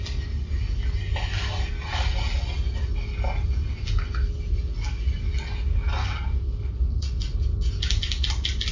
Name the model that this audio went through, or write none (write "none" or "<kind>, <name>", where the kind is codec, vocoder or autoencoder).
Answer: none